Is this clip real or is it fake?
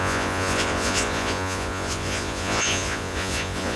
fake